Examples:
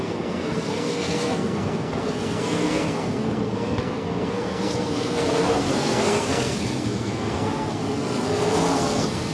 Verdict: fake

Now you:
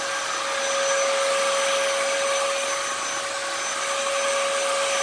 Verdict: real